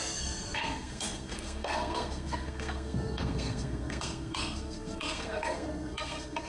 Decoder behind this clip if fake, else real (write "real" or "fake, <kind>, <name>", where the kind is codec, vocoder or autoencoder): fake, codec, SNAC